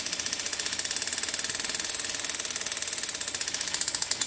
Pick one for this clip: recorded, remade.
recorded